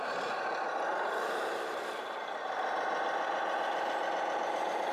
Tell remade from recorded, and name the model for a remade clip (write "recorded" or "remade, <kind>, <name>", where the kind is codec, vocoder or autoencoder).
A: recorded